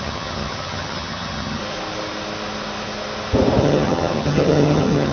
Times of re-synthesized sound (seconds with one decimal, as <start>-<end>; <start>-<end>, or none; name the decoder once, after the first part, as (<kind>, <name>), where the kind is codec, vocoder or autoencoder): 0.0-1.6 (vocoder, HiFi-GAN); 3.6-5.1